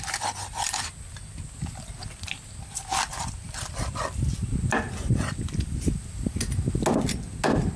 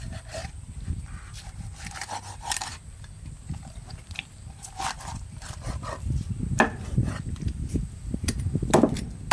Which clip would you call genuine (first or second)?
first